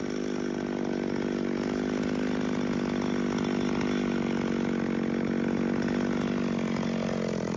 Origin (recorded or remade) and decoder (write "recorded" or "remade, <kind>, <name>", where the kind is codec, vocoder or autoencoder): recorded